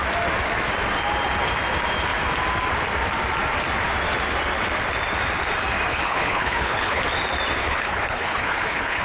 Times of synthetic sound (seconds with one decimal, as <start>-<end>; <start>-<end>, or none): 5.9-7.0; 7.6-9.0